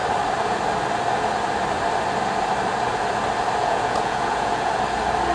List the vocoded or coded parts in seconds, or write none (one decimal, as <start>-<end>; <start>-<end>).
3.6-4.7